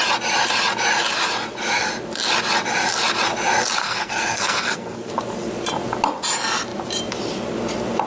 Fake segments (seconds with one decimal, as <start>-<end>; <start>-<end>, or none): 3.8-5.1